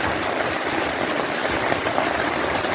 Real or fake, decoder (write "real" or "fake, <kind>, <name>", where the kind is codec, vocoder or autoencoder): real